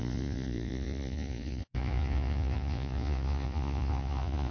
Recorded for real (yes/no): no